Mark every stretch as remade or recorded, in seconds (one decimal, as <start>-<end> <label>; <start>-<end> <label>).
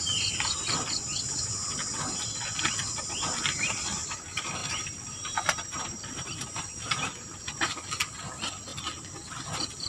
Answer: 0.0-4.6 recorded; 4.6-6.7 remade; 6.7-9.9 recorded